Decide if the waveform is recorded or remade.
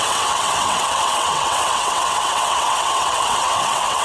remade